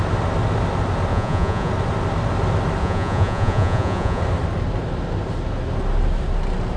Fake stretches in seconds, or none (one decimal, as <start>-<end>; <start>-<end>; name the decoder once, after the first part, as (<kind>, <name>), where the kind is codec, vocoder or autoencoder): 1.1-1.7 (vocoder, Vocos); 2.8-4.2